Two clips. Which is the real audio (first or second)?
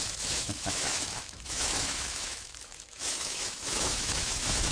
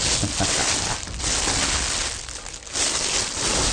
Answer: second